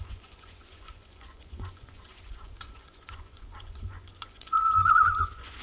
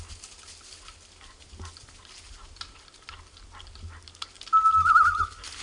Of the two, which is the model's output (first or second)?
first